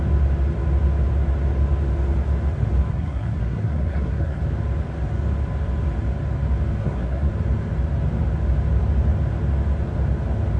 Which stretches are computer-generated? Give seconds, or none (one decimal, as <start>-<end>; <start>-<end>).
2.9-4.4; 6.8-7.3